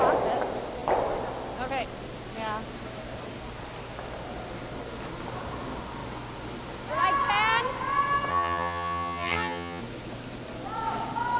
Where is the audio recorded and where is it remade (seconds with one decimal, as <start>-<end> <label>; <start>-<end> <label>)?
0.0-8.3 recorded; 8.3-9.8 remade; 9.8-11.4 recorded